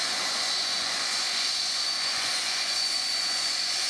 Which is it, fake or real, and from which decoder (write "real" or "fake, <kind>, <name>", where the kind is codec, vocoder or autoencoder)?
fake, vocoder, Vocos